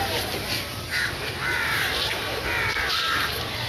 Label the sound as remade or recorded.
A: remade